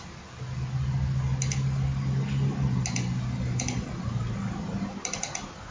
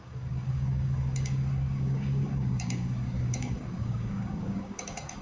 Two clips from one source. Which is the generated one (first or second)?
second